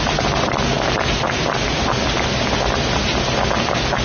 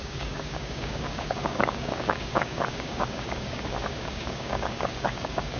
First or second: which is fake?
second